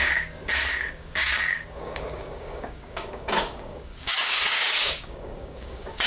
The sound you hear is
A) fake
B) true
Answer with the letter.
A